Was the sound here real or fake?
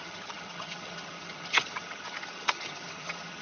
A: fake